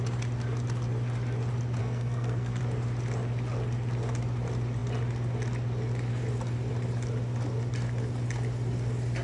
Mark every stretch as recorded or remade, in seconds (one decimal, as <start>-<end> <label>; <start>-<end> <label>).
0.0-1.8 recorded; 1.8-2.6 remade; 2.6-9.2 recorded